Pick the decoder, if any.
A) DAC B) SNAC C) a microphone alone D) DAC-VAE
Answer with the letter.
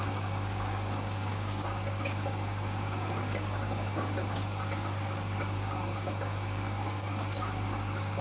A